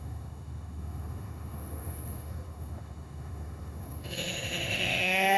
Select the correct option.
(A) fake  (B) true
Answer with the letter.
A